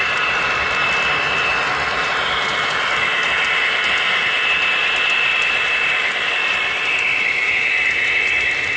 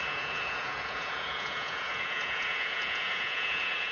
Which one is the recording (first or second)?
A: first